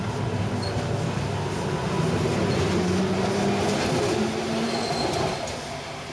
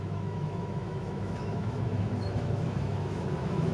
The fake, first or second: second